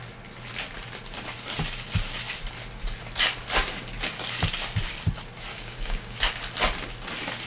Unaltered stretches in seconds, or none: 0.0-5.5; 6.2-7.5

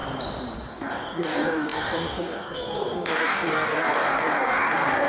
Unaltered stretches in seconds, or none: 0.0-0.7

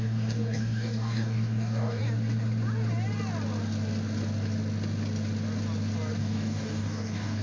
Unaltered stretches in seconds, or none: 2.0-6.2

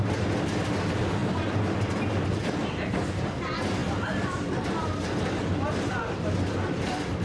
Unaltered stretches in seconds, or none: 0.0-7.2